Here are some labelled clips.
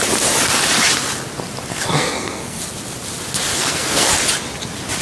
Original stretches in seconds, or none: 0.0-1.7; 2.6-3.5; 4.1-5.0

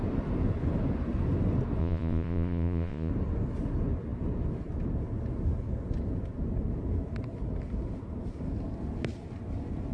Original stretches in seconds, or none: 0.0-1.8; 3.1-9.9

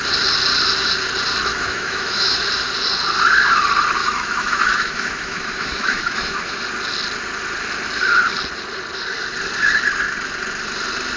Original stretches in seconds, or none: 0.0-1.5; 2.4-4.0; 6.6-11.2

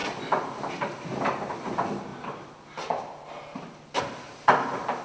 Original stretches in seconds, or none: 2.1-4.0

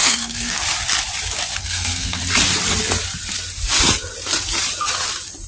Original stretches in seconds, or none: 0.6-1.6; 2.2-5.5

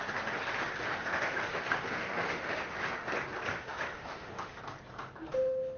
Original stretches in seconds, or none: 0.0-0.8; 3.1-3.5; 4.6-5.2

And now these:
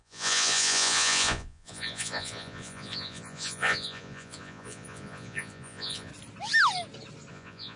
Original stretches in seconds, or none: 6.1-7.3